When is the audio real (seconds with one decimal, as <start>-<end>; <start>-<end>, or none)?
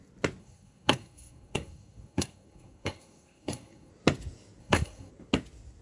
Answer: 0.0-0.4; 3.9-4.6; 5.1-5.8